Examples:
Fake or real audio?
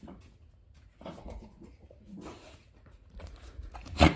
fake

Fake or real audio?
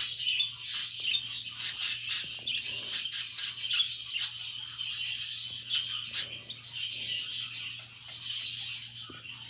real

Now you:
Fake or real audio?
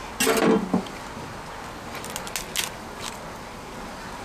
real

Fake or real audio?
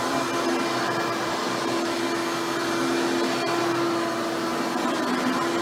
real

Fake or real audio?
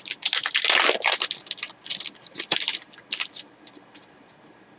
real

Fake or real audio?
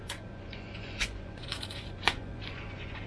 fake